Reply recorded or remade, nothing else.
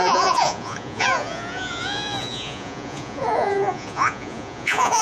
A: remade